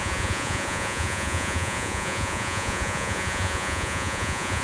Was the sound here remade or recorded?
remade